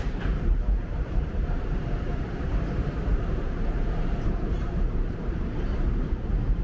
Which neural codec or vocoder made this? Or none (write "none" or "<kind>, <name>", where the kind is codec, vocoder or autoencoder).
vocoder, BigVGAN v2